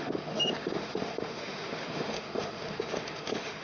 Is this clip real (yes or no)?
no